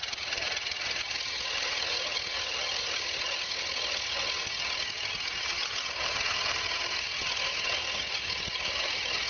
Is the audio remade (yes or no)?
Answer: yes